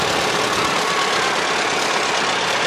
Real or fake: real